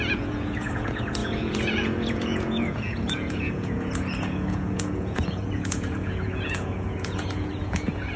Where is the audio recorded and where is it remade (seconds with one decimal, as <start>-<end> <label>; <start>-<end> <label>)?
0.0-8.2 remade